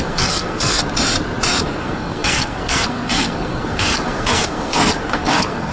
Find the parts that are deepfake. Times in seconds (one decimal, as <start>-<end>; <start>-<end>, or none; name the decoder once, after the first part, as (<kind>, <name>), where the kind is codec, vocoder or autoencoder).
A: 0.0-0.8 (codec, SNAC); 1.6-5.7